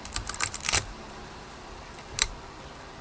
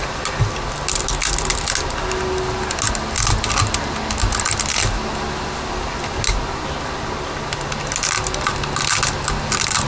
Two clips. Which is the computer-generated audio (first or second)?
first